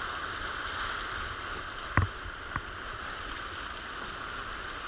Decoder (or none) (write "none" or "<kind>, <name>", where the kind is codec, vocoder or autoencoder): none